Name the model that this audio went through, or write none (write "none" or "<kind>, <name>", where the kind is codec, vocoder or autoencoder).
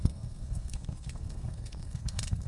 codec, SNAC